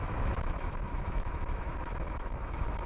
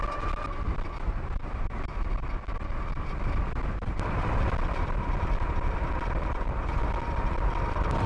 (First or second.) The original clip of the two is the second